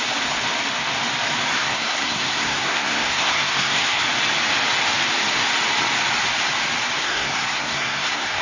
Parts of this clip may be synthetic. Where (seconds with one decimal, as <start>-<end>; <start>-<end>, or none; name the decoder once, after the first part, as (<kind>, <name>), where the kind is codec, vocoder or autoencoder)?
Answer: 1.5-4.0 (codec, SNAC); 7.0-8.4